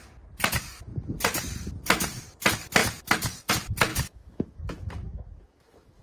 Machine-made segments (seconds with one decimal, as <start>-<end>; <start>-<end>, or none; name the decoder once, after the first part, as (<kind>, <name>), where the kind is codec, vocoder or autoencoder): 3.9-6.0 (autoencoder, DAC-VAE)